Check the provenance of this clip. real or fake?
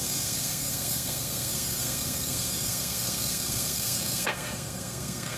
fake